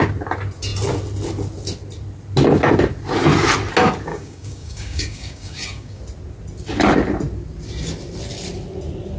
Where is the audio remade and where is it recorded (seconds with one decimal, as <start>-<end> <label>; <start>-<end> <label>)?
0.0-4.1 recorded; 4.1-6.0 remade; 6.0-9.2 recorded